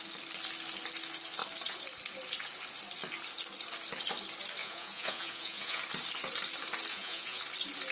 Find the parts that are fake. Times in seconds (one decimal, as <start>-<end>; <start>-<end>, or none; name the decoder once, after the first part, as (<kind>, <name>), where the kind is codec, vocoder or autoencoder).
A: 4.6-5.8 (vocoder, Vocos); 6.9-7.4